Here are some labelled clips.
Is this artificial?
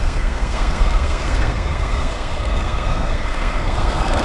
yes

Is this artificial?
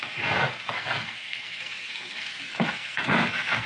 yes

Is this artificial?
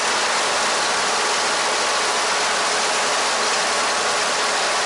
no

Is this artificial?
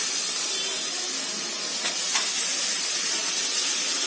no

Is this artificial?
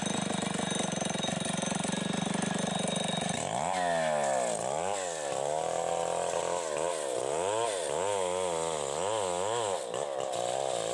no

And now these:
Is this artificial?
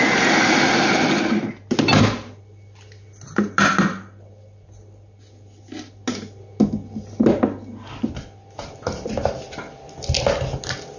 no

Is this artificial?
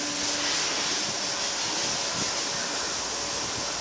no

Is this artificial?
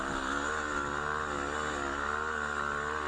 no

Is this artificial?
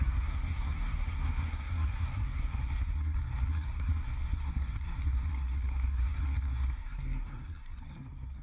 yes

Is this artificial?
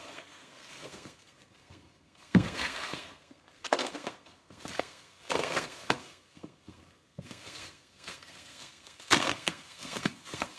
yes